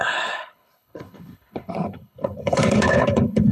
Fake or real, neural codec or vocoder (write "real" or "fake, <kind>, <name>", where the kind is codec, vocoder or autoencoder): fake, codec, HILCodec